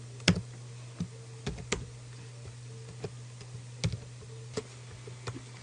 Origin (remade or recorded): recorded